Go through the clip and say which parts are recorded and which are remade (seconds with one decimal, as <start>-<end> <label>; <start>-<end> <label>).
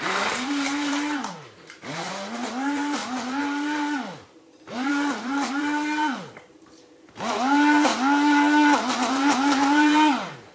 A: 0.0-7.9 remade; 7.9-9.1 recorded; 9.1-10.5 remade